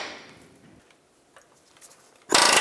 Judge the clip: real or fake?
real